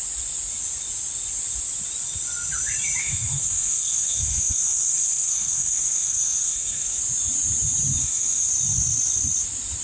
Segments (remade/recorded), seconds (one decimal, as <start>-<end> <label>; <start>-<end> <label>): 0.0-3.0 recorded; 3.0-7.0 remade; 7.0-8.0 recorded; 8.0-8.5 remade; 8.5-9.8 recorded